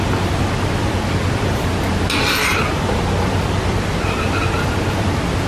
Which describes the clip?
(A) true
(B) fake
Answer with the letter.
A